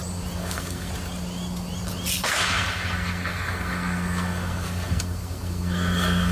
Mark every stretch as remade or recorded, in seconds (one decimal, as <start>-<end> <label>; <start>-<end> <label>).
0.0-0.4 recorded; 0.4-0.9 remade; 0.9-2.2 recorded; 2.2-6.3 remade